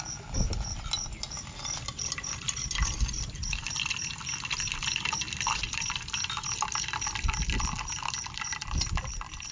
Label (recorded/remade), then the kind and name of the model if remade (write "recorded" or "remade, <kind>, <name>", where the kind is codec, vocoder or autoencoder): recorded